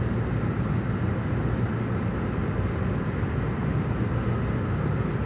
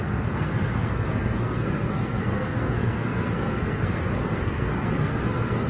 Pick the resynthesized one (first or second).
second